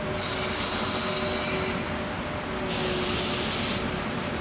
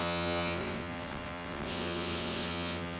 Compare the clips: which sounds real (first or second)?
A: first